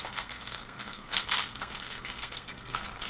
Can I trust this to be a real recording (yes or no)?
no